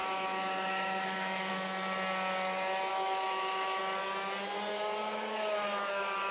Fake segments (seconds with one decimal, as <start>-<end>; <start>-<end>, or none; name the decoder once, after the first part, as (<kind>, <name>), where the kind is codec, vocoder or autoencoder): 0.0-1.5 (autoencoder, DAC-VAE); 2.9-3.8; 4.7-6.3